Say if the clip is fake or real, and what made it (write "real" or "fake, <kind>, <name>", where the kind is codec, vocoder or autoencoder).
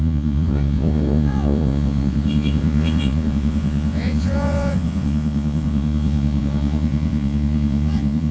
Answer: fake, vocoder, Vocos